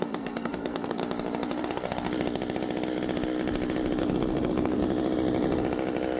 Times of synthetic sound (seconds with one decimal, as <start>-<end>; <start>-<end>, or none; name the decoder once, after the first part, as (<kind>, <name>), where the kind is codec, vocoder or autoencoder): 0.0-1.0 (codec, SNAC); 4.0-4.8